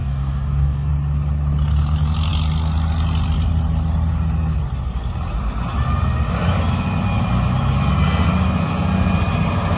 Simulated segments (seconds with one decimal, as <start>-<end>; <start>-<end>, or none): 0.0-0.9